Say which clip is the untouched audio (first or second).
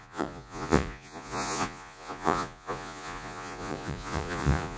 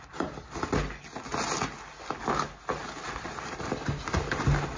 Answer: second